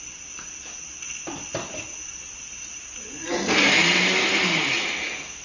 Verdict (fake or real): real